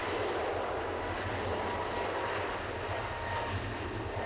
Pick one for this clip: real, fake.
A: real